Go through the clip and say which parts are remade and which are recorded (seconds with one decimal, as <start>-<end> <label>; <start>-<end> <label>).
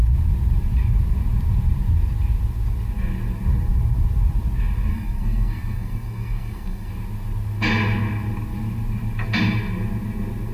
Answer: 0.0-4.9 recorded; 4.9-6.9 remade; 6.9-10.5 recorded